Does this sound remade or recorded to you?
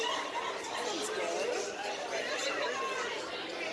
recorded